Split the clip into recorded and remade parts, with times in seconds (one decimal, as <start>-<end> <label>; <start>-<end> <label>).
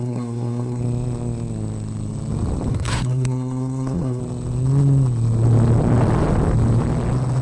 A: 0.0-0.8 remade; 0.8-2.7 recorded; 2.7-4.2 remade; 4.2-7.4 recorded